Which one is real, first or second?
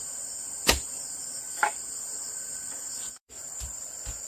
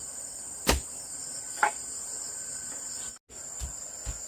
second